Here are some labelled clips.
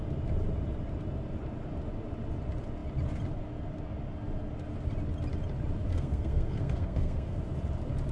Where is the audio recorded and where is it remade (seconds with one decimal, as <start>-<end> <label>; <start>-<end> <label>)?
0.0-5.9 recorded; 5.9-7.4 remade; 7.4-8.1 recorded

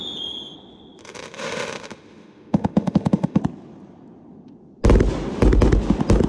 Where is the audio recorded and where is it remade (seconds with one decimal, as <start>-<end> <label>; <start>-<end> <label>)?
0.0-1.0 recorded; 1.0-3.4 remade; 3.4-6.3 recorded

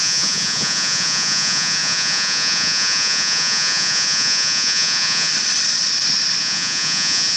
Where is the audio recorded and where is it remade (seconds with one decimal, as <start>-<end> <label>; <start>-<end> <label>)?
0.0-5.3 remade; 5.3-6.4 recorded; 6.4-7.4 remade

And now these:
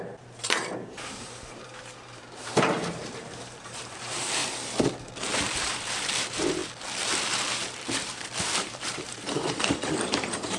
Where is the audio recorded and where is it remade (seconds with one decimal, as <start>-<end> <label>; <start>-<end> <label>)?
0.0-4.4 remade; 4.4-5.1 recorded; 5.1-6.6 remade; 6.6-7.2 recorded; 7.2-10.6 remade

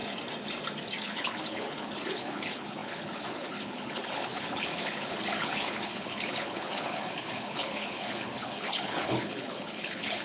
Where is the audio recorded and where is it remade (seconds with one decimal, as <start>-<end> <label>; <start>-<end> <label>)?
0.0-1.0 recorded; 1.0-10.2 remade

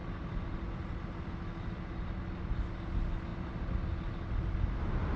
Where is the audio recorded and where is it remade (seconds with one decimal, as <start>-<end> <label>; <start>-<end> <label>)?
0.0-5.2 recorded